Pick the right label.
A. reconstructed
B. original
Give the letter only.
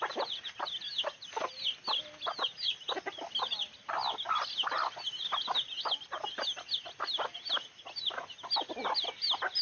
B